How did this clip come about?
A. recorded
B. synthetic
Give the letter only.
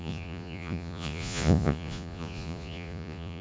B